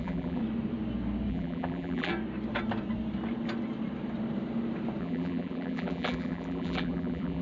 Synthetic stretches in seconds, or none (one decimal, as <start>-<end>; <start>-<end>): 0.0-0.4; 1.3-2.1; 5.0-7.4